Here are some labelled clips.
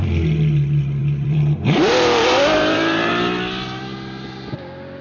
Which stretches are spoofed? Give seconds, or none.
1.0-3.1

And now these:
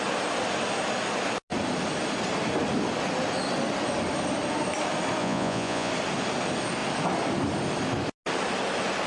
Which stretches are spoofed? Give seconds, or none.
5.2-5.9

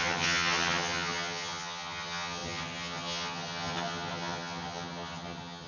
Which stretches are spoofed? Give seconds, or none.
0.0-5.7

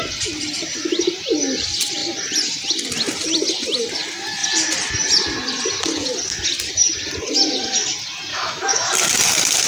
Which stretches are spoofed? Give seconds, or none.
8.3-8.9

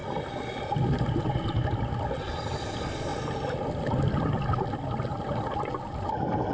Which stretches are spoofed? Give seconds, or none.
none

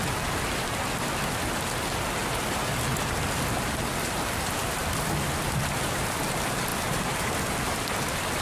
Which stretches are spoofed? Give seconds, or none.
4.8-6.2